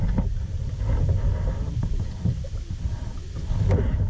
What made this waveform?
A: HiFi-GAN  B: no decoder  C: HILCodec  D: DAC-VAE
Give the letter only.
B